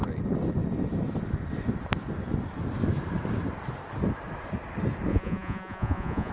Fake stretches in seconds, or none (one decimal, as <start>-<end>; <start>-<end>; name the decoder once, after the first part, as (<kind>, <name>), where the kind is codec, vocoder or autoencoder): 5.1-6.3 (vocoder, Vocos)